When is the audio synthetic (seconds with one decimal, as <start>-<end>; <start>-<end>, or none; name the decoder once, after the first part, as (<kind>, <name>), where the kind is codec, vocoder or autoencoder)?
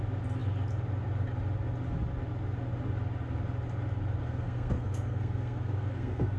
4.2-6.4 (codec, SNAC)